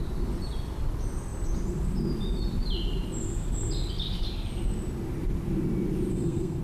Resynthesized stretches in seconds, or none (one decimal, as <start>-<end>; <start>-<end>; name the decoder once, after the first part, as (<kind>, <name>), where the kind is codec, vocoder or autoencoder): 6.1-6.6 (codec, SNAC)